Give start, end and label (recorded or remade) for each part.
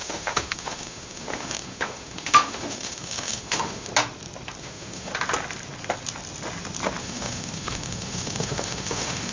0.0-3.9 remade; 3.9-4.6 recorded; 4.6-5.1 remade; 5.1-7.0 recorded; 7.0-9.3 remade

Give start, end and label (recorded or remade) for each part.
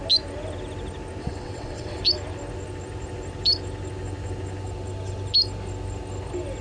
0.0-1.2 recorded; 1.2-2.0 remade; 2.0-6.6 recorded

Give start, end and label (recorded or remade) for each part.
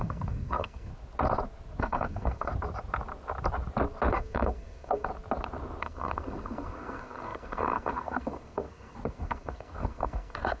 0.0-0.9 remade; 0.9-1.8 recorded; 1.8-2.5 remade; 2.5-4.1 recorded; 4.1-5.1 remade; 5.1-5.8 recorded; 5.8-10.6 remade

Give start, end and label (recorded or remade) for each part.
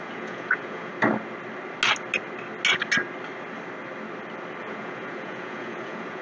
0.0-0.9 remade; 0.9-4.6 recorded; 4.6-6.2 remade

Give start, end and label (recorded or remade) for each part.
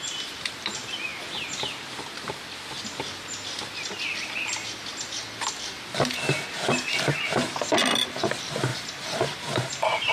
0.0-1.1 recorded; 1.1-2.3 remade; 2.3-8.7 recorded; 8.7-9.7 remade; 9.7-10.1 recorded